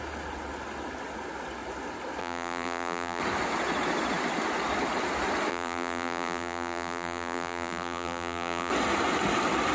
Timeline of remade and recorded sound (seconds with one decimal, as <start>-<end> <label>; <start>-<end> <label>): 0.0-2.2 recorded; 2.2-3.2 remade; 3.2-5.5 recorded; 5.5-8.7 remade; 8.7-9.7 recorded